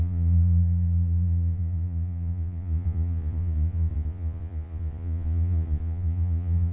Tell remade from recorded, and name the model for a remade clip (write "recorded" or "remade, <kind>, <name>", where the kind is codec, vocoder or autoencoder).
remade, vocoder, Vocos